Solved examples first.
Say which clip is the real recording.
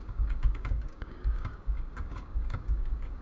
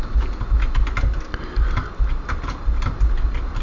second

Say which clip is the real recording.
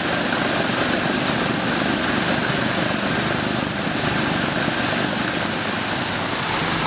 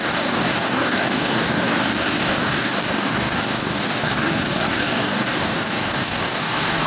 first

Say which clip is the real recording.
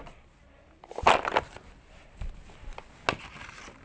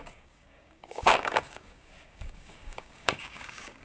first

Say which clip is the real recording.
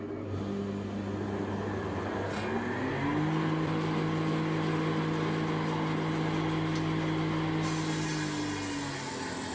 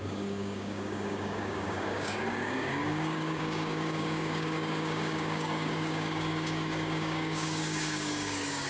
first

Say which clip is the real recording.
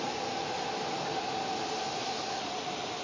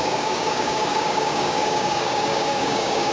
first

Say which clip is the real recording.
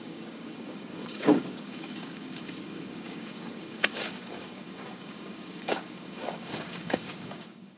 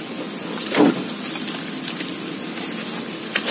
second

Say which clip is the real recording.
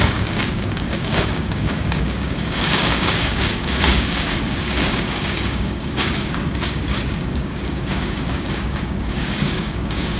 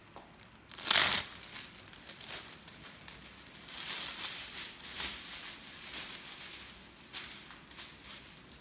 second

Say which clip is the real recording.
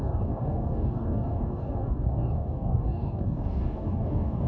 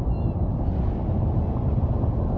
second